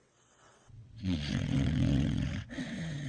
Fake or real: fake